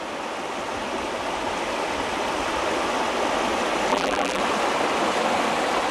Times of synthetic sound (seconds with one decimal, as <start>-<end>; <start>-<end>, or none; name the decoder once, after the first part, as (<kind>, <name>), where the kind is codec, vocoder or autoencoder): 3.9-4.4 (vocoder, BigVGAN v2)